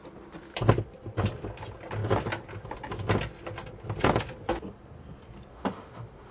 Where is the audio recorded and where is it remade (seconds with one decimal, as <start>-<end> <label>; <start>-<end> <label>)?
0.0-5.5 recorded; 5.5-6.3 remade